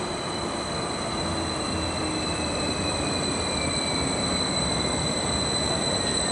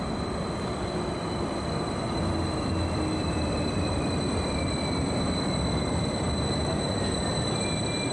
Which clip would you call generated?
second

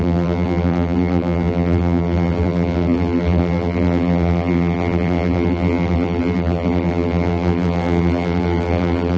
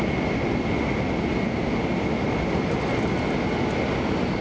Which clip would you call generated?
first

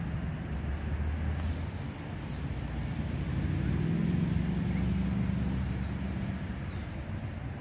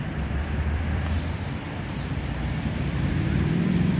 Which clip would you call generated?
second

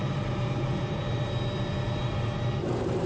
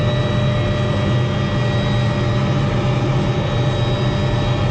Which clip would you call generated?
first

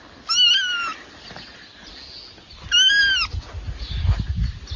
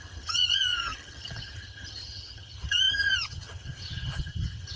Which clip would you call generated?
second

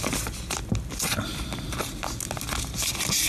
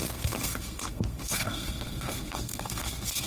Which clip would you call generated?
second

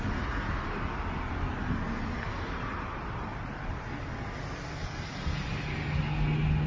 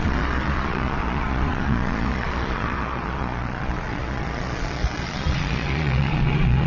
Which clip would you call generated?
second